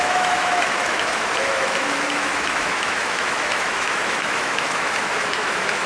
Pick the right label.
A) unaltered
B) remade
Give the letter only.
B